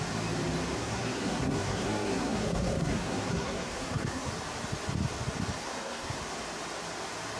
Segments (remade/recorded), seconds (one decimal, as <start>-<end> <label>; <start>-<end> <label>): 0.0-0.8 recorded; 0.8-4.3 remade; 4.3-5.6 recorded; 5.6-6.2 remade; 6.2-7.4 recorded

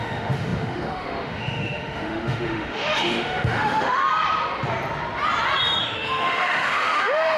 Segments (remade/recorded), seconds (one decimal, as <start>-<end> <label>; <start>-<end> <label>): 0.0-4.0 remade; 4.0-5.8 recorded; 5.8-7.4 remade

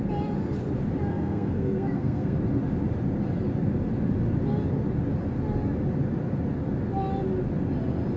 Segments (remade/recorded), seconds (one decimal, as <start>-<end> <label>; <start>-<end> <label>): 0.0-1.1 recorded; 1.1-2.4 remade; 2.4-8.2 recorded

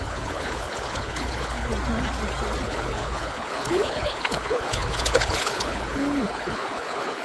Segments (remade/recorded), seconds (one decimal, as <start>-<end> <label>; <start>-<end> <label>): 0.0-1.7 remade; 1.7-2.6 recorded; 2.6-7.2 remade

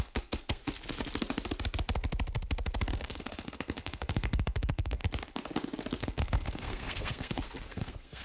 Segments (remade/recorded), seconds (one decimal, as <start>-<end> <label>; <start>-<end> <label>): 0.0-0.6 remade; 0.6-2.9 recorded; 2.9-5.0 remade; 5.0-6.0 recorded; 6.0-8.2 remade